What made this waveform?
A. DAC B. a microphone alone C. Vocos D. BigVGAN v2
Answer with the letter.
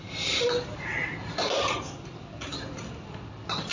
B